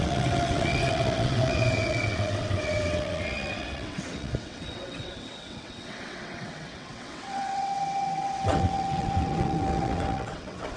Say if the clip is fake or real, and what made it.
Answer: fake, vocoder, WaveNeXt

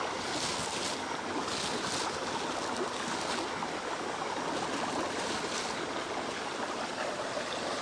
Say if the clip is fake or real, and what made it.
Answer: real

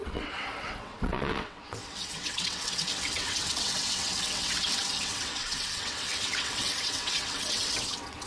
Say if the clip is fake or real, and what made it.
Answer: fake, vocoder, WaveNeXt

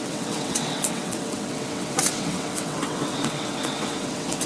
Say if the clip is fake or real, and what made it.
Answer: fake, vocoder, WaveNeXt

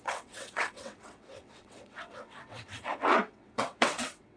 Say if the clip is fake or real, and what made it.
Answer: fake, vocoder, WaveNeXt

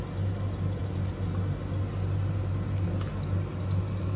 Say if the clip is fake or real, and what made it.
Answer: real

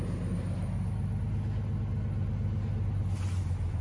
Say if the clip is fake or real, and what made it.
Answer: real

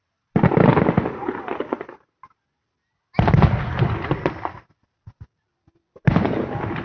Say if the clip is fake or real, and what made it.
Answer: real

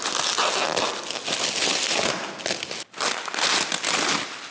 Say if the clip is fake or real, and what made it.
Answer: real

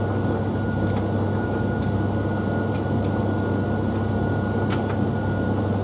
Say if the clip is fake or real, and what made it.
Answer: real